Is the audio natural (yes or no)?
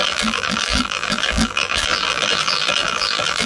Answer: no